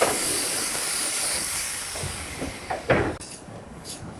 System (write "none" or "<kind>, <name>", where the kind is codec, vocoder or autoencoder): codec, DAC